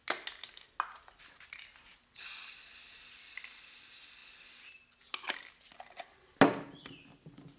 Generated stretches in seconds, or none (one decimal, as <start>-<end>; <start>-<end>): none